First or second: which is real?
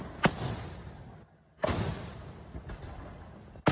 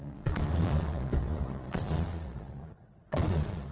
first